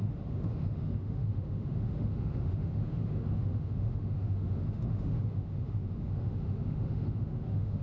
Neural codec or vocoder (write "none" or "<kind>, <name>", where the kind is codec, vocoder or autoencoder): autoencoder, DAC-VAE